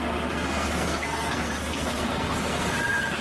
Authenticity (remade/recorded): remade